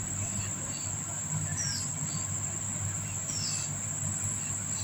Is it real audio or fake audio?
real